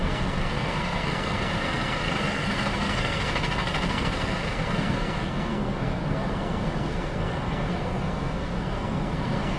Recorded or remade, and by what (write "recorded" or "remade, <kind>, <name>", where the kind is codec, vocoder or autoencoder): remade, codec, SNAC